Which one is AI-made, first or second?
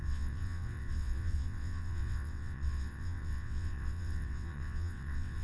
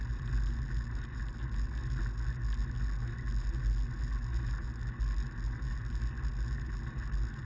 first